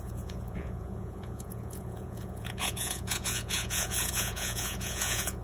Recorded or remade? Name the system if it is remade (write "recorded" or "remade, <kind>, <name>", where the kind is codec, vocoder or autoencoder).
remade, vocoder, Vocos